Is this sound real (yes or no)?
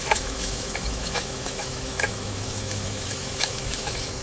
no